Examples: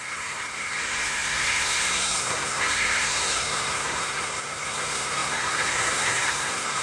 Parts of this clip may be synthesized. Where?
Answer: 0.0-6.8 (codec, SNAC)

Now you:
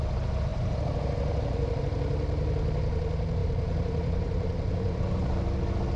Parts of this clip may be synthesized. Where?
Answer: 0.5-1.8 (vocoder, BigVGAN v2); 3.4-5.0

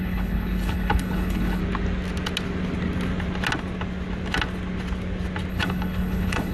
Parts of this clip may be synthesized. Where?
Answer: 0.0-1.6 (codec, HILCodec); 5.5-6.5

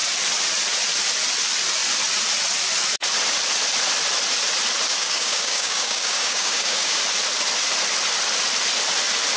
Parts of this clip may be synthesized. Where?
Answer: 4.9-7.0 (codec, DAC)

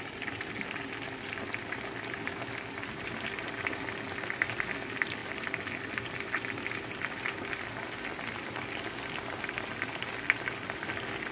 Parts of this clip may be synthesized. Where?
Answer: none

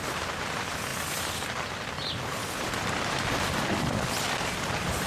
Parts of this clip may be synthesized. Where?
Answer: none

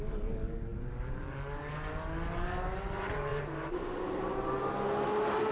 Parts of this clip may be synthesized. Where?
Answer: none